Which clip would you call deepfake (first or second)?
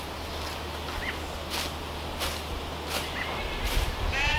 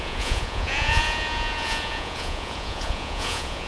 second